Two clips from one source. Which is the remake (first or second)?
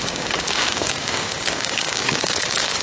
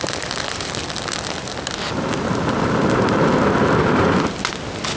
first